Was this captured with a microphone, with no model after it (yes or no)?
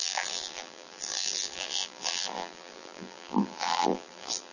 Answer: no